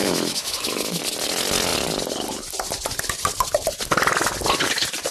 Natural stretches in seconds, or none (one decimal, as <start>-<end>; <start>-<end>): 1.0-5.1